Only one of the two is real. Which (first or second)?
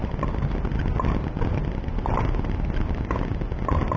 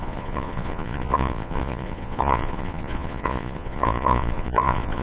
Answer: first